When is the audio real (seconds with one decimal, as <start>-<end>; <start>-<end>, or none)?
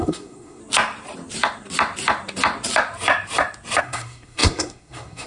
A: 0.6-3.8